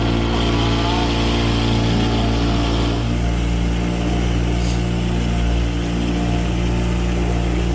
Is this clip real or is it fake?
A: real